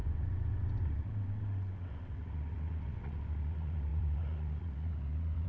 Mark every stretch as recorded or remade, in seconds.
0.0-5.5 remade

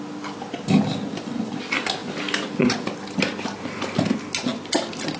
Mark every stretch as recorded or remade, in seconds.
0.0-5.2 recorded

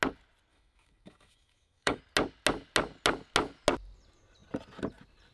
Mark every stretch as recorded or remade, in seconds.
0.0-0.5 recorded; 0.5-2.0 remade; 2.0-5.3 recorded

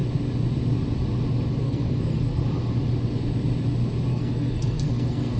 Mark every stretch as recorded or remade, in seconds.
0.0-1.6 recorded; 1.6-2.4 remade; 2.4-4.1 recorded; 4.1-5.4 remade

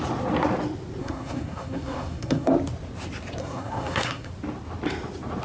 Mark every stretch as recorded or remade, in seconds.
0.0-1.0 recorded; 1.0-2.5 remade; 2.5-3.4 recorded; 3.4-4.3 remade; 4.3-5.4 recorded

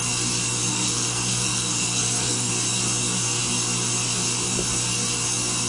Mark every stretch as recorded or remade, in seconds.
0.0-0.7 recorded; 0.7-2.5 remade; 2.5-5.7 recorded

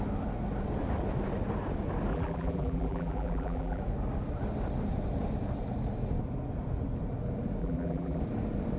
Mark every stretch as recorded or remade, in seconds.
0.0-2.1 recorded; 2.1-3.8 remade; 3.8-7.6 recorded; 7.6-8.2 remade; 8.2-8.8 recorded

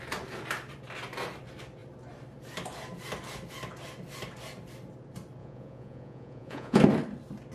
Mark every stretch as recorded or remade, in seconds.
0.0-5.4 recorded; 5.4-6.8 remade; 6.8-7.5 recorded